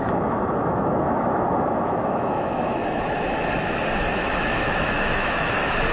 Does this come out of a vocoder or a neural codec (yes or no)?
yes